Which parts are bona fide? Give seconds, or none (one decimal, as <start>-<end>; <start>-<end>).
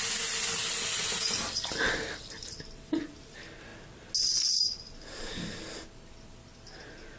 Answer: 0.0-7.2